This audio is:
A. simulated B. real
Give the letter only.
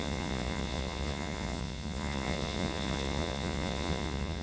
A